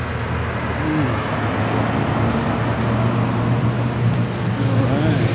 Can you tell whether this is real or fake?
real